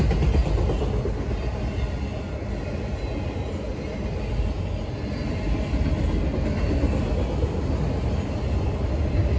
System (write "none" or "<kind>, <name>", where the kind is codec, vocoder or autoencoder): none